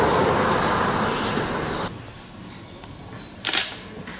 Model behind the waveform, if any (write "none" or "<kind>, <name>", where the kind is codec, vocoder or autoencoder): none